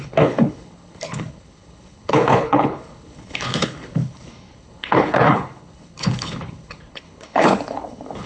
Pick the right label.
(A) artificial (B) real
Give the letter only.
A